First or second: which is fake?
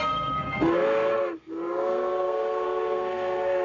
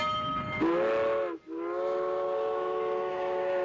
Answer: first